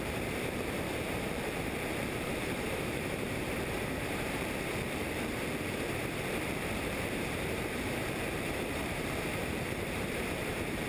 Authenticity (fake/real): fake